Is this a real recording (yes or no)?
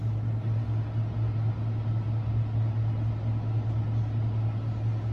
yes